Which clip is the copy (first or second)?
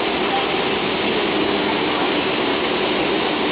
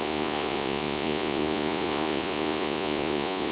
second